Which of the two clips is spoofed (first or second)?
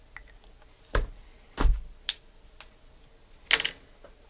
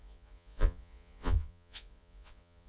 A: second